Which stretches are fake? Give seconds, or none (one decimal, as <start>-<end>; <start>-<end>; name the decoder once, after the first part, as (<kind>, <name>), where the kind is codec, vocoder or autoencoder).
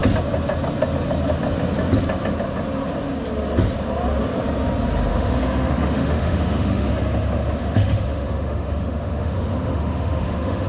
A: 5.1-6.9 (autoencoder, DAC-VAE); 7.6-10.7